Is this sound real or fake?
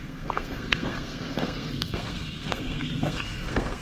fake